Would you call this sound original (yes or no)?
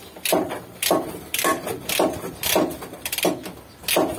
no